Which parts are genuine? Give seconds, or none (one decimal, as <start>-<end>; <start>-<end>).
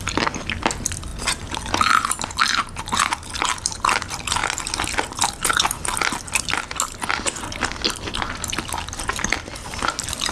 0.0-10.3